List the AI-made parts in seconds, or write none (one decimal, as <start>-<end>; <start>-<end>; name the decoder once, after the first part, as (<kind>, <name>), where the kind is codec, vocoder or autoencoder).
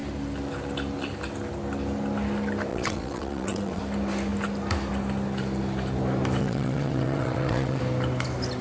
2.7-3.8 (vocoder, WaveNeXt); 6.4-7.8